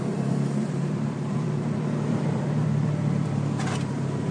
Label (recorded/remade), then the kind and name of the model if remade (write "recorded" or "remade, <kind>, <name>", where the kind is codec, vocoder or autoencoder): remade, vocoder, BigVGAN v2